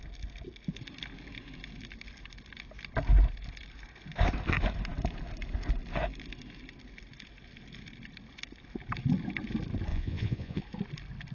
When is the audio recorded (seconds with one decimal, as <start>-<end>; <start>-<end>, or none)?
0.0-9.9; 10.6-11.3